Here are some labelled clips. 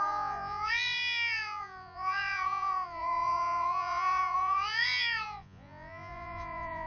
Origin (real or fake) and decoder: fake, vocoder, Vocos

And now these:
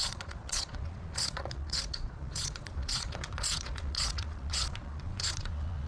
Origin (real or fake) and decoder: fake, vocoder, Vocos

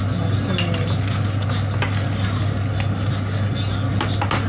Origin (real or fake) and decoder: real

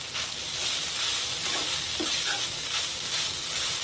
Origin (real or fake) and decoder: real